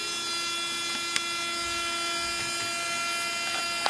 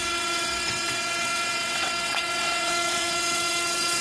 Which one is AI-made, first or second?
second